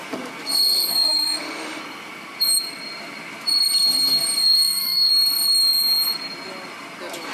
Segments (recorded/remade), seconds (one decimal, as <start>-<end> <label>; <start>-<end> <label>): 0.0-0.9 recorded; 0.9-1.8 remade; 1.8-4.4 recorded; 4.4-5.1 remade; 5.1-7.3 recorded